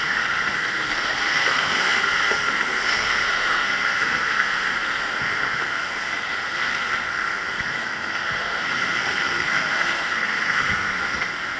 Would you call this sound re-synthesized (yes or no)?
yes